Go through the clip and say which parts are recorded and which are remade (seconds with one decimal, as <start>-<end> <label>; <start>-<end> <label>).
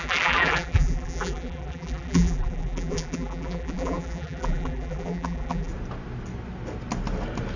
0.0-5.7 remade; 5.7-7.6 recorded